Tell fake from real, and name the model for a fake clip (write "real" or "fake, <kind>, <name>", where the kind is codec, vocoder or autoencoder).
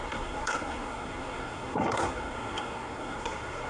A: fake, codec, SNAC